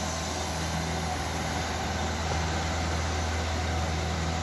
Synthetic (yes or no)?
no